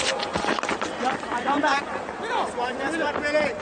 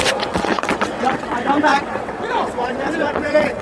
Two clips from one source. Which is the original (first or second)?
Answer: first